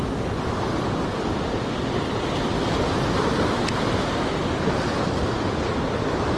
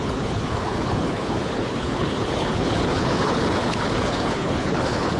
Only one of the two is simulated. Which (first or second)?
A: second